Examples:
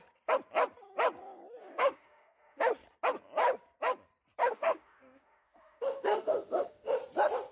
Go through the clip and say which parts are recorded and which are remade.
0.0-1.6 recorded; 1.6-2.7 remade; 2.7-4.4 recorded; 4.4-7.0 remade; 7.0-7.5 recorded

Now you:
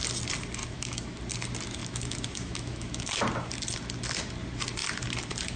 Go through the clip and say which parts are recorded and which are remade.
0.0-0.6 recorded; 0.6-1.2 remade; 1.2-1.8 recorded; 1.8-3.2 remade; 3.2-5.6 recorded

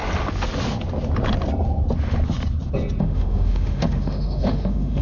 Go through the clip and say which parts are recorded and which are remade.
0.0-3.0 recorded; 3.0-5.0 remade

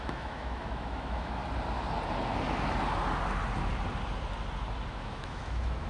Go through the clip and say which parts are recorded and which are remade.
0.0-1.4 remade; 1.4-4.9 recorded; 4.9-5.9 remade

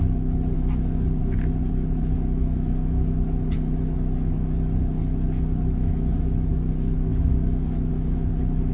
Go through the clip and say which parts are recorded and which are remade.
0.0-8.7 remade